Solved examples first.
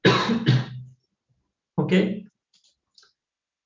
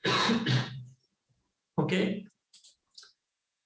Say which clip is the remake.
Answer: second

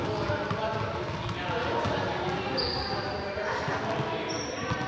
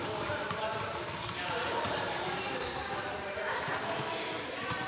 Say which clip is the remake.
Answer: second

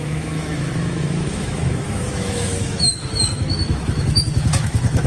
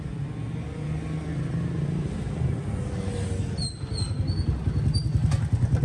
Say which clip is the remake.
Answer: first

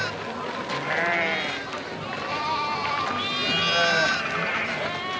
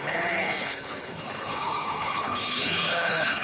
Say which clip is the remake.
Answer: second